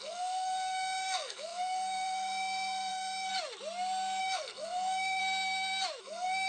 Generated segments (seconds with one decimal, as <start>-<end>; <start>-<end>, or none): 0.0-3.3; 4.2-5.2; 6.0-6.5